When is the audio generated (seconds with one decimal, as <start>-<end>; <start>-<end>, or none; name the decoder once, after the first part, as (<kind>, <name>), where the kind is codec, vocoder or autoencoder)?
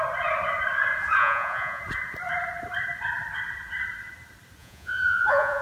1.2-1.8 (vocoder, Vocos); 4.6-5.6